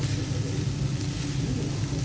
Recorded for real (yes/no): yes